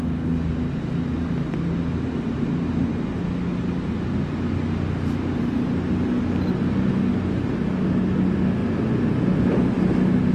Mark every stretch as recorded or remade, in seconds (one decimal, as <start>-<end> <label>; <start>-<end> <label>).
0.0-10.3 recorded